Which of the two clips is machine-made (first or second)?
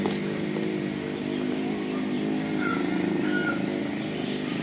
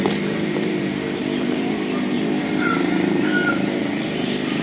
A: second